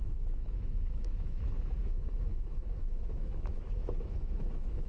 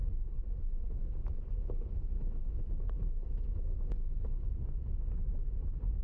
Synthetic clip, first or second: first